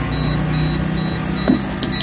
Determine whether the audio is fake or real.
real